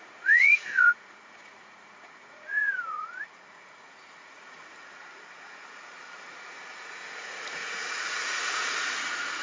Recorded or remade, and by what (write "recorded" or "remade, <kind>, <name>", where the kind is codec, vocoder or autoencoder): remade, vocoder, Vocos